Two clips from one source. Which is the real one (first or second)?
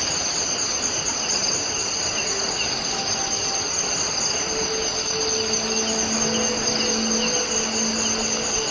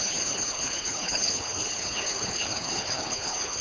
first